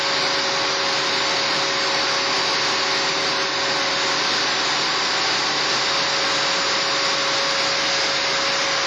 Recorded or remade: recorded